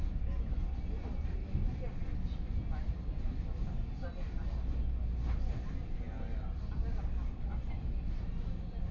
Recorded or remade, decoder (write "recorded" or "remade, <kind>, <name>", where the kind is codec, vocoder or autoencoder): recorded